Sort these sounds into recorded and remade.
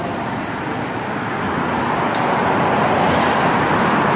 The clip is recorded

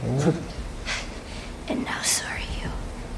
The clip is recorded